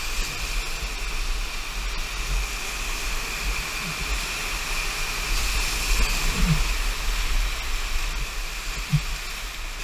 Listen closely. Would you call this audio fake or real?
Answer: real